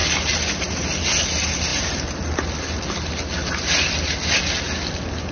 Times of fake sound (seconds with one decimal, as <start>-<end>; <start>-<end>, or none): none